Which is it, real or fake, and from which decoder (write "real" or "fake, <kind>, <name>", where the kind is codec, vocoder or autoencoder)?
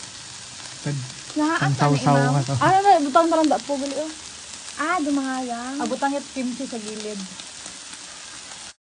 real